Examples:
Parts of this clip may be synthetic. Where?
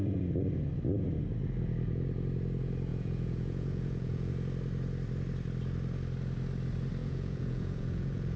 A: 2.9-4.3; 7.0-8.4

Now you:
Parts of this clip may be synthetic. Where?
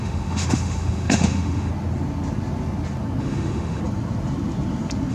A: 0.0-1.7; 3.2-3.8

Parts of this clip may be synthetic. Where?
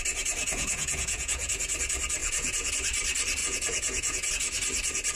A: 0.4-1.5; 2.2-2.7; 3.4-4.3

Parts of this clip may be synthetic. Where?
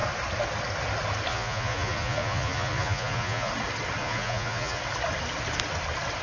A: 1.3-3.5; 4.0-4.8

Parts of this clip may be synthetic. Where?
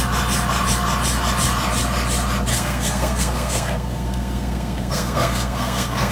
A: 2.5-6.1